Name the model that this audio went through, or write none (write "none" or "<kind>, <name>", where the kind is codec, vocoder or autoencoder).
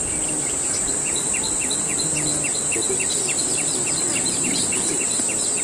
none